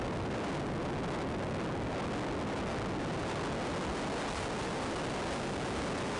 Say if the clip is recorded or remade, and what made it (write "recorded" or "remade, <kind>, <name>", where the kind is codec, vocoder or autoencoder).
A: recorded